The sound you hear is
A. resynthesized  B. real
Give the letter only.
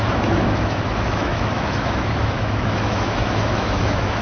A